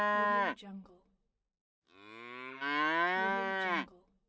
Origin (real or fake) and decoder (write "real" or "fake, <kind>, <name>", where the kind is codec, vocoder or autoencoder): real